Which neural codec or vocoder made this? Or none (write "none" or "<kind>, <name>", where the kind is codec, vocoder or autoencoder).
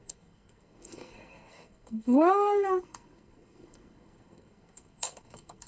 codec, SNAC